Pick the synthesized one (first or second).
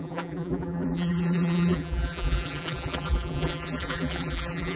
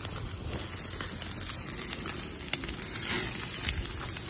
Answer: first